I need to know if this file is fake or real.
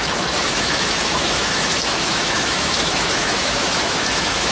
fake